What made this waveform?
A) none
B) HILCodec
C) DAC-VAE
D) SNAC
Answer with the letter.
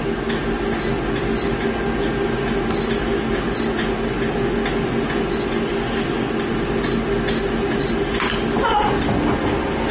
A